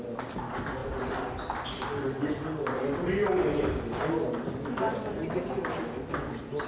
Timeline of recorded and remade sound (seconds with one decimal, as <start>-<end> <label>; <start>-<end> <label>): 0.0-6.7 recorded